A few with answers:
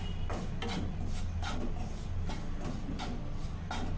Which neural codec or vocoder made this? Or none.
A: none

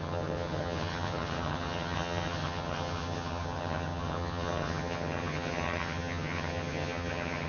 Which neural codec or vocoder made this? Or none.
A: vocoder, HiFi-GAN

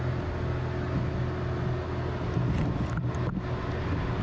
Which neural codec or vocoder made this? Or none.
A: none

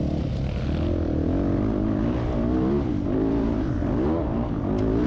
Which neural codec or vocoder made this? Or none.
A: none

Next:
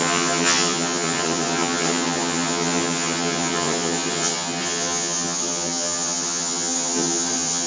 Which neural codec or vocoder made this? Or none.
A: vocoder, HiFi-GAN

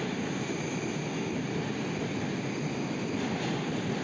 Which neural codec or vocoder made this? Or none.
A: none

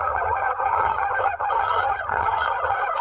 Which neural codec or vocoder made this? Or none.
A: vocoder, HiFi-GAN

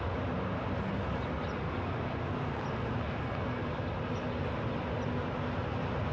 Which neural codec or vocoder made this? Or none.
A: none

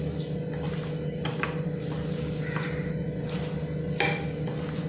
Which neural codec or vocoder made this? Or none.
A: none